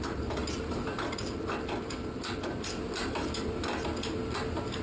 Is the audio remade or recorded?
recorded